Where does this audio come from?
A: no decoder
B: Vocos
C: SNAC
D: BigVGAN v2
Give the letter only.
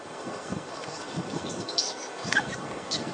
C